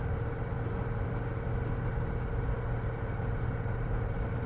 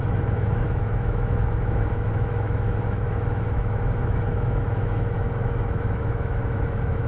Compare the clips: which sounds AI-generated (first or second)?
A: second